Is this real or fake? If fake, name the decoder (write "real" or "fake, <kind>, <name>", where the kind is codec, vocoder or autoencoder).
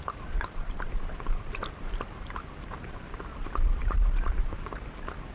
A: real